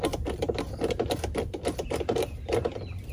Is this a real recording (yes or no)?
no